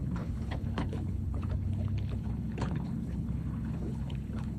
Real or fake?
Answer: fake